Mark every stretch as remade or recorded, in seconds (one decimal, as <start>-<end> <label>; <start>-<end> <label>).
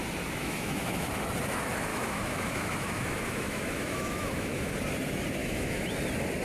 0.0-0.4 recorded; 0.4-1.1 remade; 1.1-1.9 recorded; 1.9-4.7 remade; 4.7-5.4 recorded; 5.4-5.9 remade; 5.9-6.4 recorded